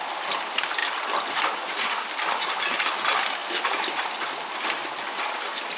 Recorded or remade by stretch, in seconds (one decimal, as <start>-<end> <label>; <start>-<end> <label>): 0.0-5.8 recorded